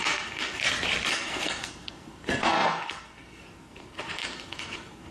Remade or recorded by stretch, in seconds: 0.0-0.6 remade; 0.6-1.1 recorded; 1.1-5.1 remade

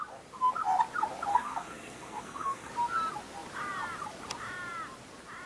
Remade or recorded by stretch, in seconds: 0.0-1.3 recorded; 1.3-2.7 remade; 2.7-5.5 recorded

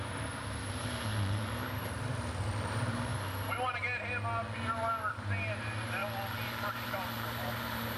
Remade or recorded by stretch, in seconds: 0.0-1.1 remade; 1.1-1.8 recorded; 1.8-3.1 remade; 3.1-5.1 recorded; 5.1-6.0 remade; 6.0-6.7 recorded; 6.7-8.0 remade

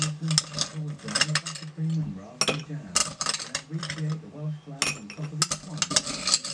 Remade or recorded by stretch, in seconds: 0.0-6.5 recorded